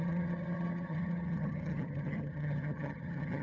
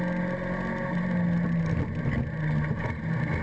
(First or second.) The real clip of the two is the second